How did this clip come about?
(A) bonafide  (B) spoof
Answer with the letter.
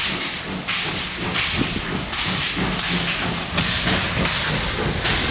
A